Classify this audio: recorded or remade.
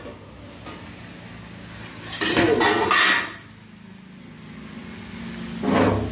recorded